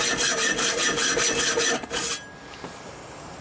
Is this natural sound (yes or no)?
yes